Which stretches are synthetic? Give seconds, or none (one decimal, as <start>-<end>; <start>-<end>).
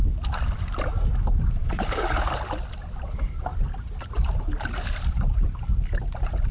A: 1.6-2.2